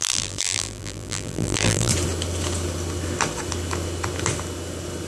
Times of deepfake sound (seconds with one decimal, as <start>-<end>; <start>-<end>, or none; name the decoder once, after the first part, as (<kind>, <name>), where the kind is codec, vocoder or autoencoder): 0.0-1.9 (vocoder, BigVGAN v2)

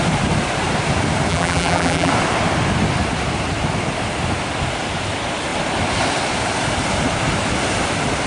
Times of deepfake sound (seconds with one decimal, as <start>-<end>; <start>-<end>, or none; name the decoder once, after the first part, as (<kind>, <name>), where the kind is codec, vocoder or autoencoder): 1.3-2.1 (vocoder, BigVGAN v2)

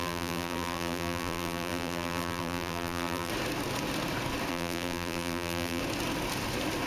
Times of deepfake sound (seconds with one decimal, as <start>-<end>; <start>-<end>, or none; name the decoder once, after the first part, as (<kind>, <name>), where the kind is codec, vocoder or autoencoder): 0.0-3.3 (vocoder, BigVGAN v2); 4.5-5.8

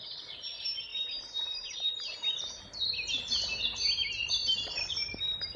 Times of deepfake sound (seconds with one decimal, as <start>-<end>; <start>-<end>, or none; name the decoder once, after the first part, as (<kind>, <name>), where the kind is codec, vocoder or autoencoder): 0.0-0.9 (vocoder, BigVGAN v2); 4.3-5.6

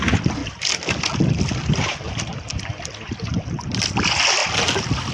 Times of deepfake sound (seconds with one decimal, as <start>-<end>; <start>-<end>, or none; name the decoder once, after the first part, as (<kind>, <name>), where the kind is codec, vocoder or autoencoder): 0.4-3.5 (vocoder, BigVGAN v2)

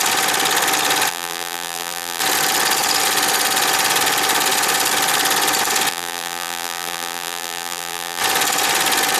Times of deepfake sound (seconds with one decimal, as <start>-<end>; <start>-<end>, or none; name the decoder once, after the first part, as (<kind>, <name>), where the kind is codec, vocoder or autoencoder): 1.1-2.2 (vocoder, BigVGAN v2); 5.9-8.2